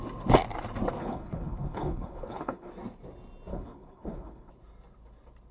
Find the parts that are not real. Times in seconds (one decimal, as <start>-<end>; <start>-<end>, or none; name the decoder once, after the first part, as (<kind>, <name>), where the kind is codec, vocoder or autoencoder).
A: 1.0-2.7 (codec, HILCodec); 3.5-4.5